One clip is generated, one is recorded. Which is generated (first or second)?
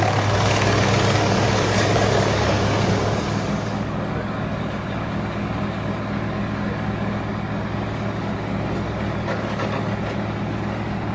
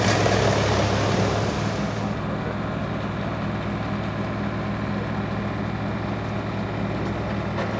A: first